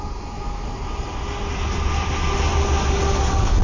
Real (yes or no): yes